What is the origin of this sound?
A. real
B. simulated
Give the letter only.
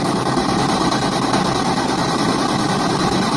B